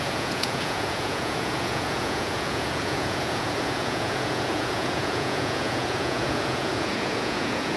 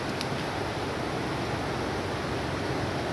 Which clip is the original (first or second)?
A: second